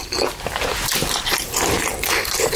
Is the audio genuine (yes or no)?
no